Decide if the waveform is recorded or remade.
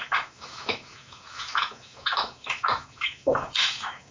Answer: remade